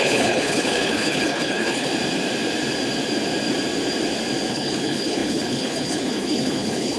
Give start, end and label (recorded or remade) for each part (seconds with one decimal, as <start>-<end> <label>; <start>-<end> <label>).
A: 0.0-1.9 remade; 1.9-4.5 recorded; 4.5-7.0 remade